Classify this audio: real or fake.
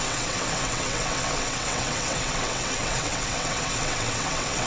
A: fake